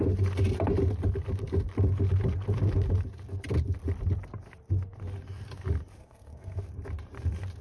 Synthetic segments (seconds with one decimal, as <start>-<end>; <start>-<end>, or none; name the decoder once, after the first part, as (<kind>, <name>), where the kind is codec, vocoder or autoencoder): 6.0-6.6 (codec, SNAC)